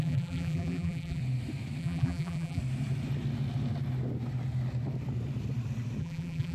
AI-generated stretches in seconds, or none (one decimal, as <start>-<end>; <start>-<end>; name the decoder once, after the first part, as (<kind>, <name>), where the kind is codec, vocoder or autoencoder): 0.0-1.2 (vocoder, BigVGAN v2); 1.8-2.6; 6.0-6.5